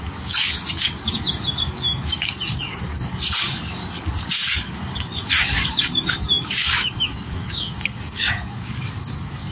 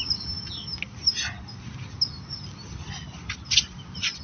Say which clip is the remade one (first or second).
first